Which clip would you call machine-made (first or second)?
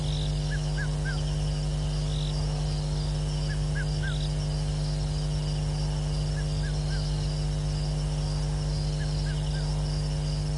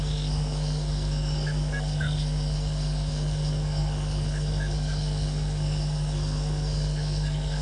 second